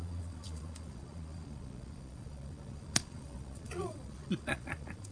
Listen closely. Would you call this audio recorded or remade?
remade